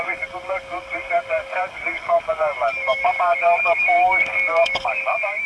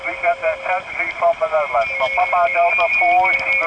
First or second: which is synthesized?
first